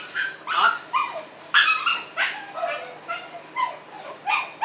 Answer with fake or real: real